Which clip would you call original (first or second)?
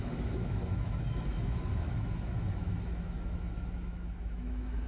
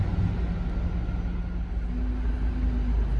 second